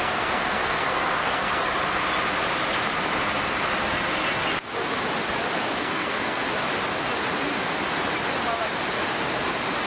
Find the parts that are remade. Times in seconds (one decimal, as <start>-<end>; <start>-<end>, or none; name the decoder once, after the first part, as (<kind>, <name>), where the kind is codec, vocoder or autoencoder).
0.0-1.6 (codec, SNAC); 5.8-6.4